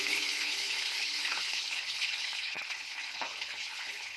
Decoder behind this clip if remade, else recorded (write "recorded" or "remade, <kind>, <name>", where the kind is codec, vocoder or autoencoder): remade, codec, HILCodec